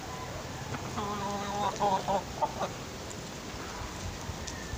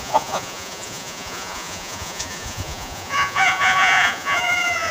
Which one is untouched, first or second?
first